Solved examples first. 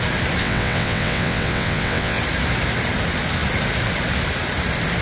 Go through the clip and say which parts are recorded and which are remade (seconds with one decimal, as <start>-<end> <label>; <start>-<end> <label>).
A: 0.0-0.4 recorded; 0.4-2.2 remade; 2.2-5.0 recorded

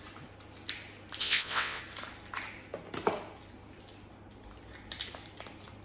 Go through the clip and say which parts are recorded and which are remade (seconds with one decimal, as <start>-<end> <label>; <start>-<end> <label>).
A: 0.0-1.2 recorded; 1.2-1.8 remade; 1.8-5.8 recorded

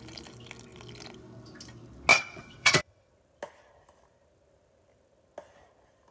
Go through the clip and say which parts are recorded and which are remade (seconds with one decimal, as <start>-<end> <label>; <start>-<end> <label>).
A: 0.0-2.1 recorded; 2.1-3.1 remade; 3.1-6.1 recorded

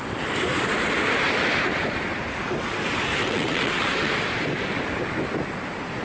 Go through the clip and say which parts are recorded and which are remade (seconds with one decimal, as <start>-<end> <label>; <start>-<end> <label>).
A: 0.0-3.2 recorded; 3.2-4.1 remade; 4.1-6.0 recorded